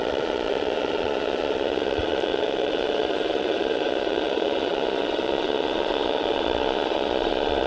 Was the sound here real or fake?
fake